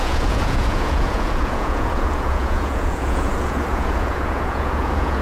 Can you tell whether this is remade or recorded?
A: remade